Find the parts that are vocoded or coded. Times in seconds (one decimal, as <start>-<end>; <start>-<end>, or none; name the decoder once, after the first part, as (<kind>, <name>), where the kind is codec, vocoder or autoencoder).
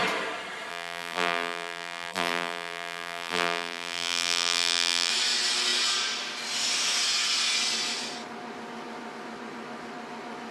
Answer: 0.7-5.1 (vocoder, BigVGAN v2)